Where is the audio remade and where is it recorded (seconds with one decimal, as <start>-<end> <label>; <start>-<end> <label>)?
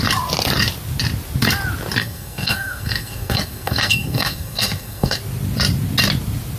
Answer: 0.0-2.0 recorded; 2.0-5.2 remade; 5.2-6.6 recorded